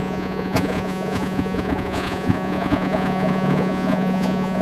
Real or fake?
fake